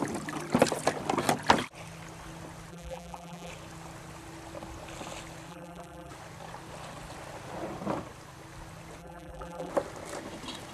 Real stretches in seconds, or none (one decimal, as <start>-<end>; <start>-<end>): 0.0-2.7; 3.5-5.5; 6.1-9.0; 9.7-10.7